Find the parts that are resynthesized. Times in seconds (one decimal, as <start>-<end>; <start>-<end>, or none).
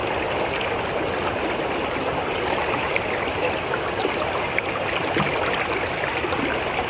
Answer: none